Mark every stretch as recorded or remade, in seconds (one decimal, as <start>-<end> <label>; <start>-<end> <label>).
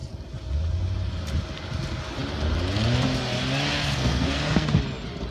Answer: 0.0-3.7 recorded; 3.7-4.8 remade; 4.8-5.3 recorded